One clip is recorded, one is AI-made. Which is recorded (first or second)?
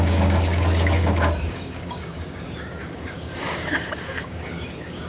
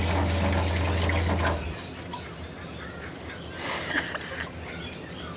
second